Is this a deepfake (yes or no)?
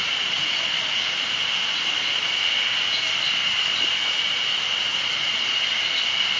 no